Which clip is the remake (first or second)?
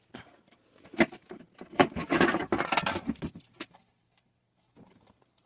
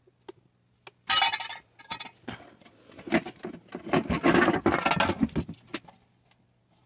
first